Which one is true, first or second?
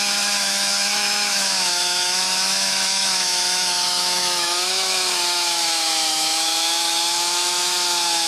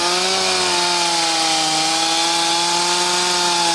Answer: second